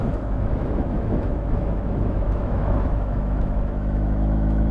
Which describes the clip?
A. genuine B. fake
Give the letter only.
B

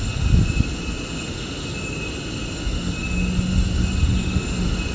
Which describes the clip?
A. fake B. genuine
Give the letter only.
B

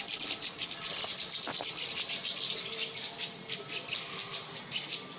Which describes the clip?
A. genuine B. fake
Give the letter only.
A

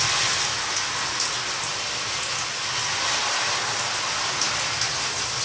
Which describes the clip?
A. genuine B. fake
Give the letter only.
A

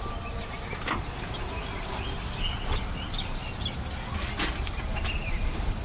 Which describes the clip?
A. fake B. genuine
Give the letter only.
B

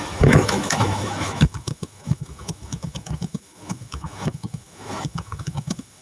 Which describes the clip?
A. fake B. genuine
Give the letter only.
A